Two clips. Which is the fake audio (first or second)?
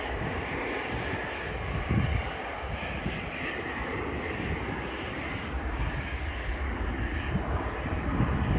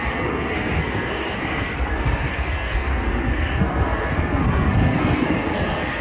second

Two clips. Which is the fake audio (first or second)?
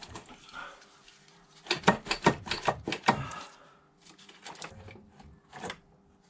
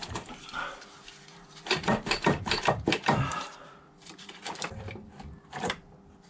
second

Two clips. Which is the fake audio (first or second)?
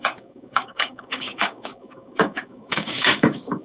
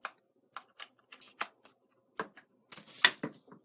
first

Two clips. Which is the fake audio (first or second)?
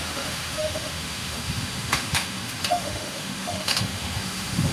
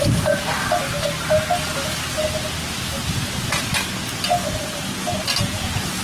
first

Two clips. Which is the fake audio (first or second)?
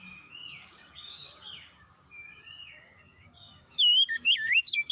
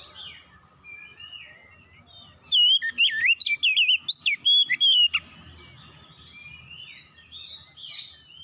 first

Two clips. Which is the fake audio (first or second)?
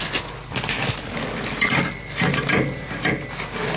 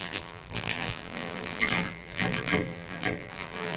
second